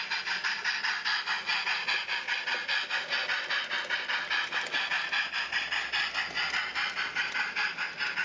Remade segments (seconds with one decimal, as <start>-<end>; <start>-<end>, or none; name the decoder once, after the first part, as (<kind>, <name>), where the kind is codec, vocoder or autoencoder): none